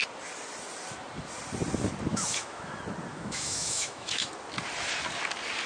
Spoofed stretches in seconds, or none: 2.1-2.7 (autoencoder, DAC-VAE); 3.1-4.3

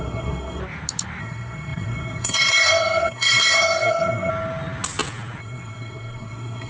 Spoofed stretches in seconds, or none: 0.0-0.6 (codec, SNAC); 1.2-4.3; 5.4-6.7

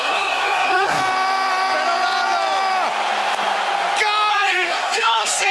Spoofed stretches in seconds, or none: 0.0-1.0 (codec, SNAC); 4.3-5.5